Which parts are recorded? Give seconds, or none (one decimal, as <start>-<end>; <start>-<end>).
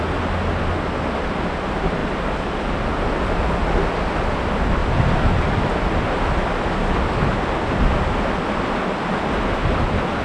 0.0-10.2